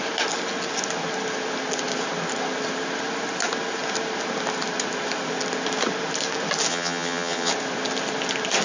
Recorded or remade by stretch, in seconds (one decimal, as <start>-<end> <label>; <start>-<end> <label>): 0.0-6.7 recorded; 6.7-7.5 remade; 7.5-8.6 recorded